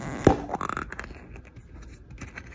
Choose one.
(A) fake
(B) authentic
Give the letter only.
B